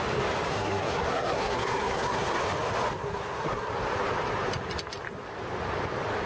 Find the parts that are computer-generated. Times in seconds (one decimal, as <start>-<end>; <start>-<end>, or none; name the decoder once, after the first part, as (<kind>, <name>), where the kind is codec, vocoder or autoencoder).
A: 0.5-2.4 (codec, SNAC); 3.0-3.7